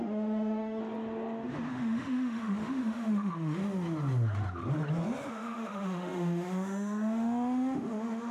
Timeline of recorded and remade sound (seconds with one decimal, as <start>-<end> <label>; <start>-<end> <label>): 0.0-0.8 remade; 0.8-1.7 recorded; 1.7-3.6 remade; 3.6-5.3 recorded; 5.3-8.3 remade